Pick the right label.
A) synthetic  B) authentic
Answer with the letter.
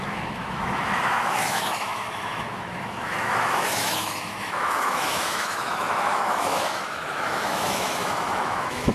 A